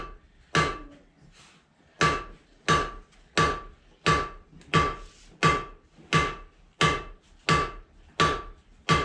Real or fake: real